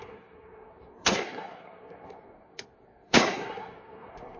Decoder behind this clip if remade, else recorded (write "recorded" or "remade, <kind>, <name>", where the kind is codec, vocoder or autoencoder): remade, codec, SNAC